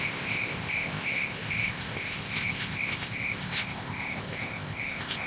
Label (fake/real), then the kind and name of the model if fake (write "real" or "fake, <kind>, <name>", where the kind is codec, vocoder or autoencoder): fake, codec, ZipCodec